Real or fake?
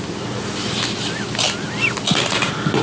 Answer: real